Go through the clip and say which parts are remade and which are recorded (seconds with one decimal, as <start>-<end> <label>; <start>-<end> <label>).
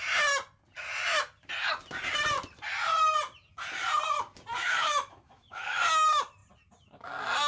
0.0-4.6 recorded; 4.6-5.8 remade; 5.8-7.5 recorded